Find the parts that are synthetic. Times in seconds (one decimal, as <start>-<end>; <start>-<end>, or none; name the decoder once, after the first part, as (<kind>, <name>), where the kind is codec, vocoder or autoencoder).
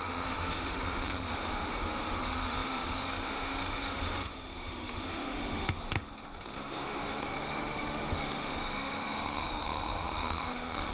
0.0-10.9 (autoencoder, DAC-VAE)